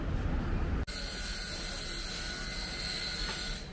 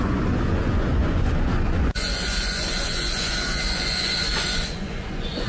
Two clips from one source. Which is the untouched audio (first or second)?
first